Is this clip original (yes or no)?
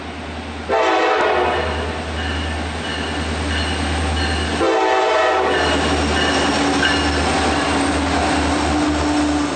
yes